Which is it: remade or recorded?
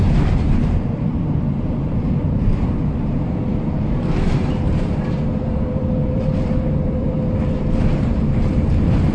remade